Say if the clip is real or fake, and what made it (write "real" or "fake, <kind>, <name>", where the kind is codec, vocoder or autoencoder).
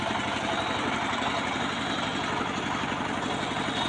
real